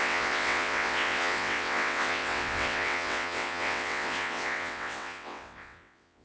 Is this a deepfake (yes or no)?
yes